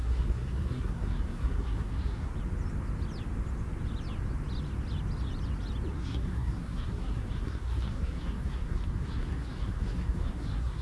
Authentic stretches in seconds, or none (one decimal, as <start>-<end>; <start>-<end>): 2.3-5.9